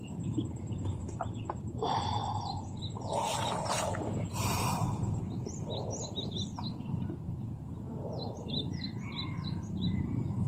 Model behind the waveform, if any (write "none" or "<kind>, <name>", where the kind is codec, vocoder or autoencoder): vocoder, BigVGAN v2